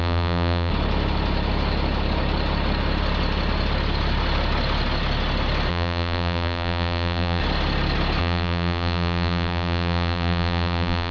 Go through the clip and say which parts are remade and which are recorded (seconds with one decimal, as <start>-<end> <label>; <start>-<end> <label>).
0.0-0.7 remade; 0.7-5.7 recorded; 5.7-7.4 remade; 7.4-8.2 recorded; 8.2-11.1 remade